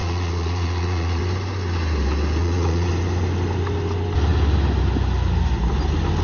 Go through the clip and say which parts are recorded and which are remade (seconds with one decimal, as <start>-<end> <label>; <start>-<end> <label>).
0.0-1.2 remade; 1.2-2.4 recorded; 2.4-2.9 remade; 2.9-6.2 recorded